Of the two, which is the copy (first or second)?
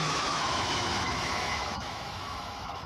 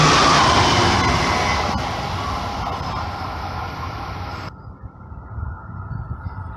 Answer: first